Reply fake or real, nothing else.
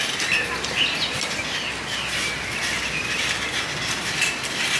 real